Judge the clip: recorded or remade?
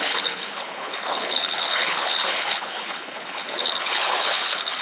remade